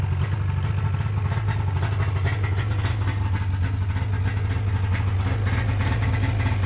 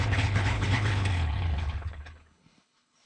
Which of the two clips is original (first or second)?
first